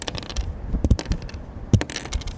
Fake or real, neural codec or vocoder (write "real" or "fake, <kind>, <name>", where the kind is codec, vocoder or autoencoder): fake, vocoder, BigVGAN v2